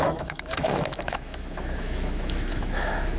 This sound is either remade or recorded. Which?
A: remade